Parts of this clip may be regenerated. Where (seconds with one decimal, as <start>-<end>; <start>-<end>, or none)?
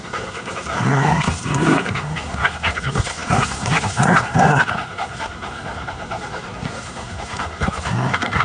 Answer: 0.0-8.4